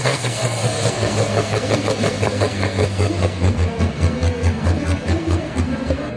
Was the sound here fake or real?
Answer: fake